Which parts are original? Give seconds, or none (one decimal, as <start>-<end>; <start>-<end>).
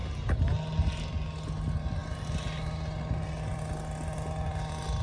0.0-5.0